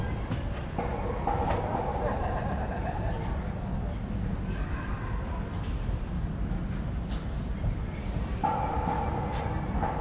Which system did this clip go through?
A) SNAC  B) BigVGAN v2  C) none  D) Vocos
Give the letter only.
C